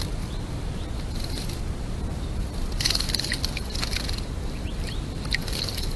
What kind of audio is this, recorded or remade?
recorded